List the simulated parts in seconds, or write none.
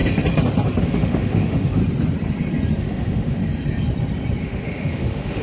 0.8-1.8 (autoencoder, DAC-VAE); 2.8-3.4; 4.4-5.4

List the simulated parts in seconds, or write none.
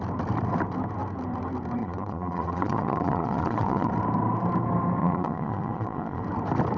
1.8-3.9 (vocoder, Vocos); 5.0-6.2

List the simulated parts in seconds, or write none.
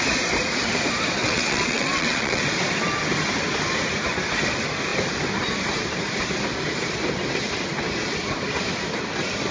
1.2-2.4 (vocoder, WaveNeXt)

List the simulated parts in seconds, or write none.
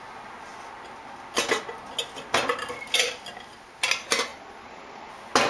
4.3-5.1 (vocoder, Vocos)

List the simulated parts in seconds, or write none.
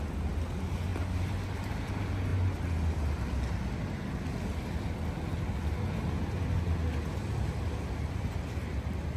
none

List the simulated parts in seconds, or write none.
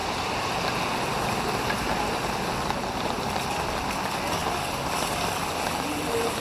none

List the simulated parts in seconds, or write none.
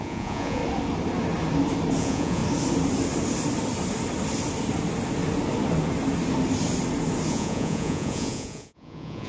0.0-0.6 (vocoder, Vocos); 2.0-2.4; 7.3-9.3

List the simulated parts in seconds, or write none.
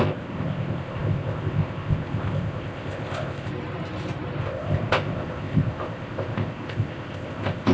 0.0-3.5 (codec, ZipCodec); 4.4-7.7